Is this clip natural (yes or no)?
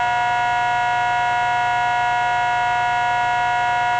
yes